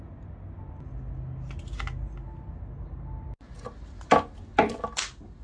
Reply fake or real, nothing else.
real